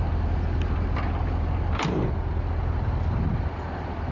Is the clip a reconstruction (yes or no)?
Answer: no